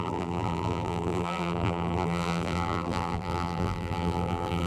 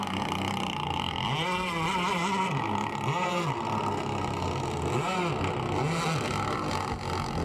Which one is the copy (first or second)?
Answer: first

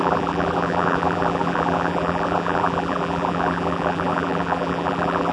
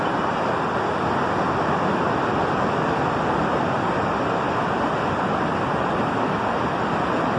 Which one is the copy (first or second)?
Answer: first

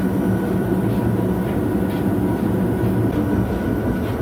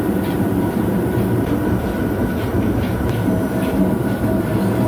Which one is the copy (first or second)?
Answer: second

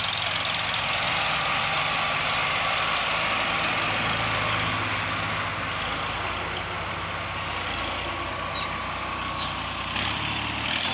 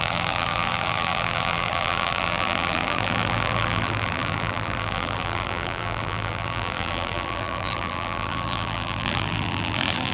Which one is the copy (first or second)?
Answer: second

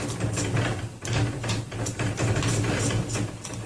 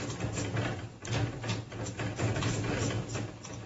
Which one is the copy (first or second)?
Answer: first